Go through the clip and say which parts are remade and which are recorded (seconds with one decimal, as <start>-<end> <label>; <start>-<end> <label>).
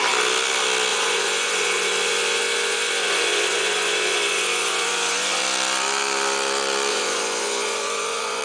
0.0-0.9 recorded; 0.9-5.4 remade; 5.4-6.9 recorded; 6.9-8.4 remade